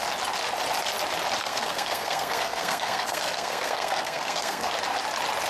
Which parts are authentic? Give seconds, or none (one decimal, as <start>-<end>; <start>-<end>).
0.0-1.4; 4.7-5.5